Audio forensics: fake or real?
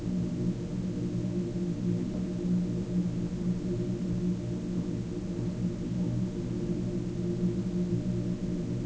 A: real